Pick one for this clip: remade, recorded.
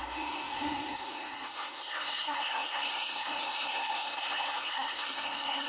remade